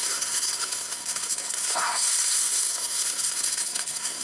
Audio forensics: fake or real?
fake